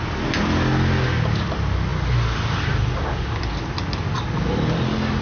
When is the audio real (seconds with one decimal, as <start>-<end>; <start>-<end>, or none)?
0.0-5.2